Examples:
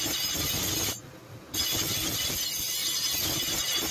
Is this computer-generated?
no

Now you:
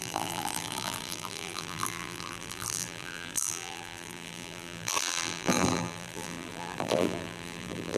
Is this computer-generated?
yes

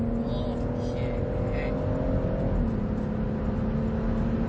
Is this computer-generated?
no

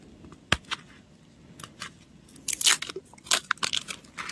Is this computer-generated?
no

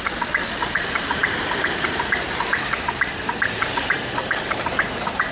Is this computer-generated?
yes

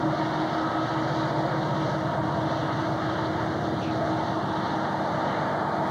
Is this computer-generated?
no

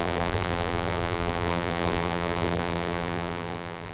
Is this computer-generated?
yes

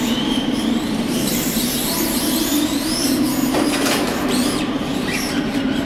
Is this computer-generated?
yes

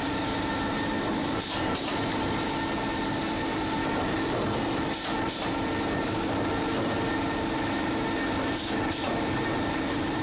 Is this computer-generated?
yes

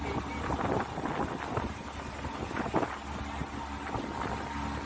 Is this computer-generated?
no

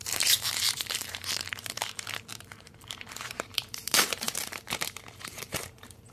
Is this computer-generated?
yes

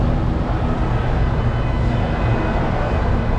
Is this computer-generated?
no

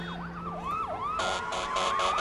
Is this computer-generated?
yes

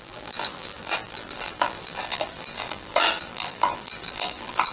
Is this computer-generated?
yes